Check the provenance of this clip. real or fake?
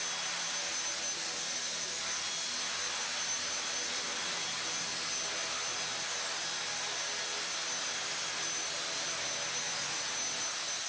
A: real